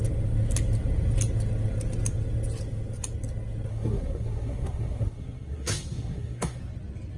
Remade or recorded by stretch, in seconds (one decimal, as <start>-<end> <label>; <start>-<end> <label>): 0.0-3.7 recorded; 3.7-6.6 remade; 6.6-7.2 recorded